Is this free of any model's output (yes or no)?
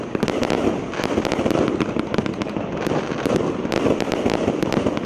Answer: yes